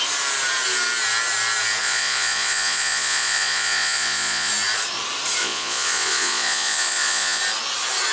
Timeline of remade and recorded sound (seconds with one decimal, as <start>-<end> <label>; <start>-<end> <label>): 0.0-1.8 recorded; 1.8-4.5 remade; 4.5-5.4 recorded; 5.4-7.4 remade; 7.4-8.1 recorded